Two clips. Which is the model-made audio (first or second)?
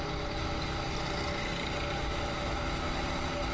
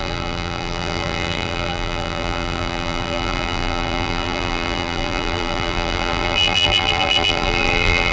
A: second